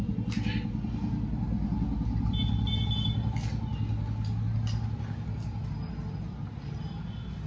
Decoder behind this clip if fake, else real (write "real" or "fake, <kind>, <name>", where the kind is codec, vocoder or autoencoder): real